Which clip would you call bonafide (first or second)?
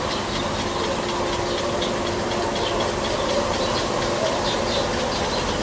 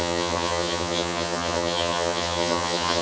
first